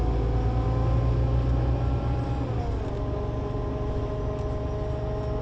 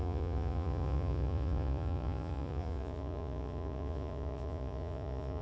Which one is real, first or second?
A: first